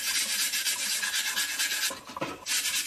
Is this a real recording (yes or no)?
yes